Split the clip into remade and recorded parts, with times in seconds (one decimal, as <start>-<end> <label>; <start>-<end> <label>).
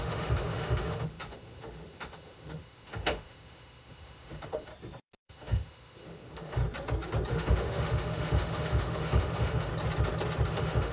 0.0-4.7 remade; 4.7-5.2 recorded; 5.2-6.6 remade; 6.6-7.3 recorded; 7.3-9.7 remade; 9.7-10.5 recorded; 10.5-10.9 remade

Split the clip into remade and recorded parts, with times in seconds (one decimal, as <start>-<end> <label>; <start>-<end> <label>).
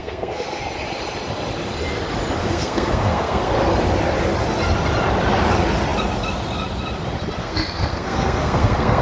0.0-0.6 remade; 0.6-2.4 recorded; 2.4-3.5 remade; 3.5-7.4 recorded; 7.4-9.0 remade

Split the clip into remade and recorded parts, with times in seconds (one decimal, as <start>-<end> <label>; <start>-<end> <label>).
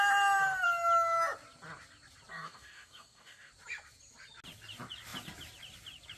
0.0-2.3 recorded; 2.3-3.5 remade; 3.5-6.2 recorded